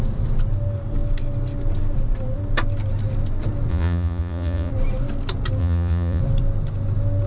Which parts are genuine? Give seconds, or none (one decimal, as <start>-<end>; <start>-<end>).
0.0-3.7; 4.7-5.6; 6.2-7.3